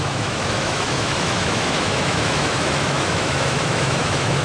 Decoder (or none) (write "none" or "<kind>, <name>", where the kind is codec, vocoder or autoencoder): autoencoder, DAC-VAE